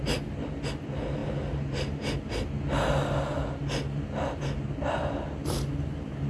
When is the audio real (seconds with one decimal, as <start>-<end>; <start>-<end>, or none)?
0.0-6.3